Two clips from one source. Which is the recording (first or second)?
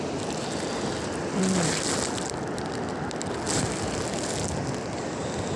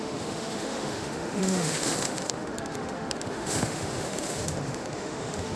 first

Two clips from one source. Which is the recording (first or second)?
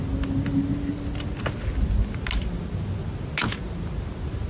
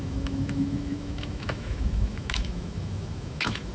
first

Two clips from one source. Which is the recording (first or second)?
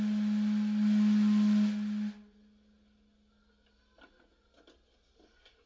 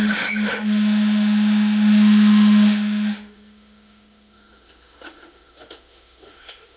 first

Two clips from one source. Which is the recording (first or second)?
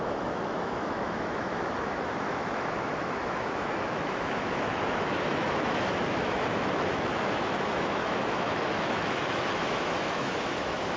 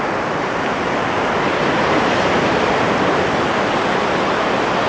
second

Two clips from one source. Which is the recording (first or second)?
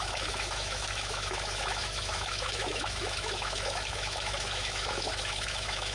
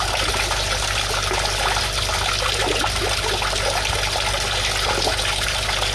second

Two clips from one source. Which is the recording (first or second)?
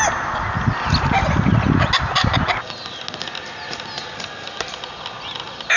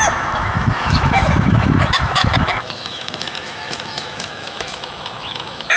first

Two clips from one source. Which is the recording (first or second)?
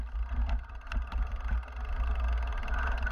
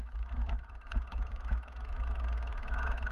first